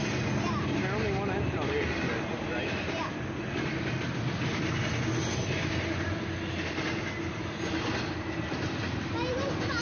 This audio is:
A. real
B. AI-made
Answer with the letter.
A